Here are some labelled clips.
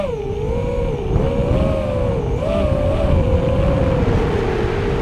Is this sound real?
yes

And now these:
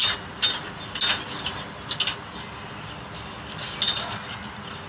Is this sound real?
yes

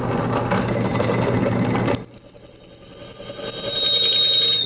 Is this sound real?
yes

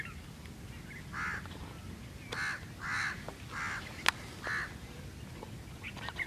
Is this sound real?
yes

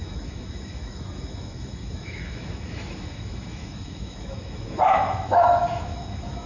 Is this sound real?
no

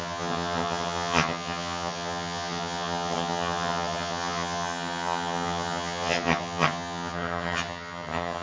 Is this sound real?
no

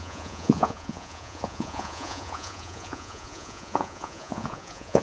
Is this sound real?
no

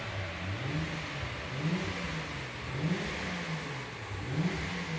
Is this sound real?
yes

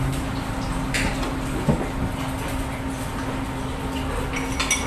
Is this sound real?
yes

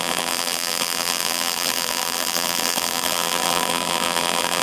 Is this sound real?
no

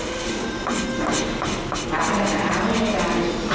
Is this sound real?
yes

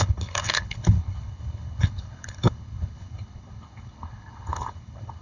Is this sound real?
no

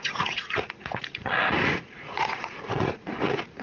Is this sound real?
no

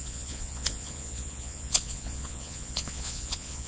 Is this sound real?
no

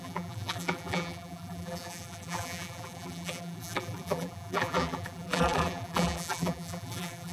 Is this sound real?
no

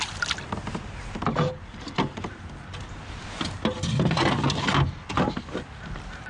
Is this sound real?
yes